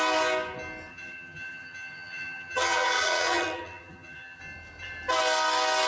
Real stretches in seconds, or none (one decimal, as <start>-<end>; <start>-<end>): 0.0-0.9; 4.4-5.9